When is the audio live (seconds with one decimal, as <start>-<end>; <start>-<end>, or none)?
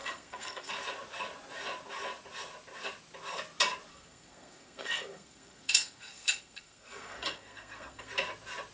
0.7-3.9; 8.1-8.7